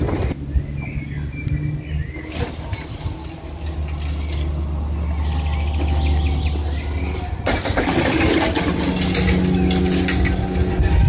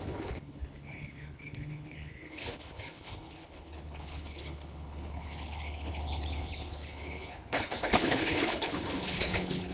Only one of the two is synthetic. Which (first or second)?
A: second